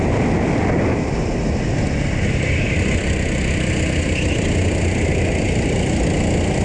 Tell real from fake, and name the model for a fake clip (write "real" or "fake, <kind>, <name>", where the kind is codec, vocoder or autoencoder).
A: real